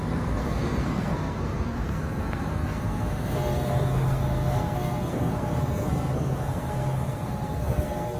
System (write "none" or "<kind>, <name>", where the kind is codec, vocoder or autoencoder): codec, SNAC